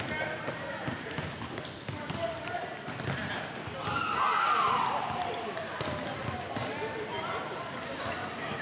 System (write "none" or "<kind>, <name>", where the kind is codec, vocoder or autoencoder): none